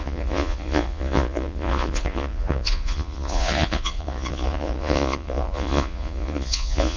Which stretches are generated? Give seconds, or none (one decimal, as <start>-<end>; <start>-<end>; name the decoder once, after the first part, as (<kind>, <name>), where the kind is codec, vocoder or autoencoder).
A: 0.0-7.0 (vocoder, Vocos)